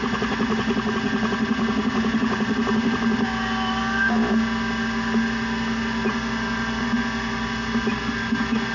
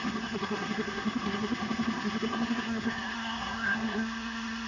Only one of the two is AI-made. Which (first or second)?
second